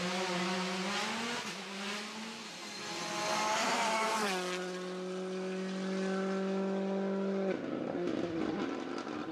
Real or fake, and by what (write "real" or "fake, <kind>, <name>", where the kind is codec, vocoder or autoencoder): real